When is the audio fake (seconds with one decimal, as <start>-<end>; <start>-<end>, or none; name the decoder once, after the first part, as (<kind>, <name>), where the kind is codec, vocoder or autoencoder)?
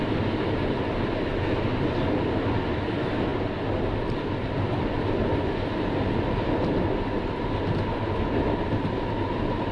none